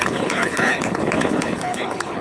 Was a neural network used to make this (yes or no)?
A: yes